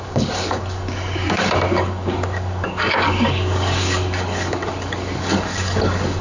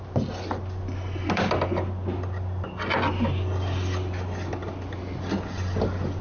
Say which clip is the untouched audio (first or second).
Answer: second